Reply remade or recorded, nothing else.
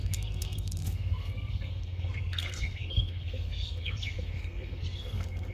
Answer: remade